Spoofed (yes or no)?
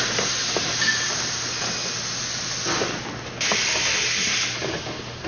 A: no